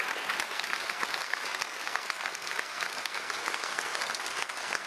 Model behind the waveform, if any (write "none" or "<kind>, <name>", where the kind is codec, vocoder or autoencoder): codec, SNAC